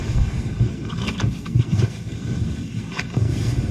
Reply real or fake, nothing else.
fake